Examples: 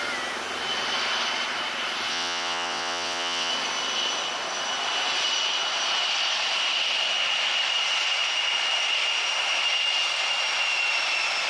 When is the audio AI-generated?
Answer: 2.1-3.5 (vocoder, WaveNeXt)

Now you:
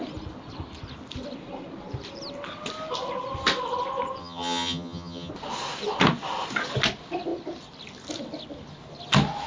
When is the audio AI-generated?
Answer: 4.2-5.3 (vocoder, HiFi-GAN)

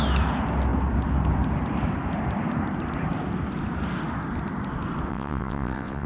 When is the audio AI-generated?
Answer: 5.1-6.1 (vocoder, WaveNeXt)

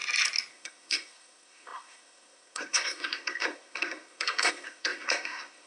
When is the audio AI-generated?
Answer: 0.5-5.7 (codec, SNAC)

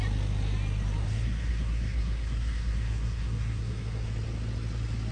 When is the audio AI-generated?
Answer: 1.0-4.1 (codec, SNAC)

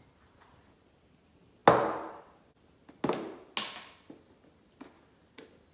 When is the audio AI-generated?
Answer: none